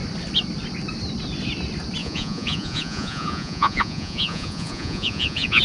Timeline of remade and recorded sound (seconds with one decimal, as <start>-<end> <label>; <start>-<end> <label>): 0.0-2.0 recorded; 2.0-5.6 remade